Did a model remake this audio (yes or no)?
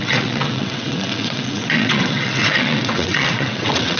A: yes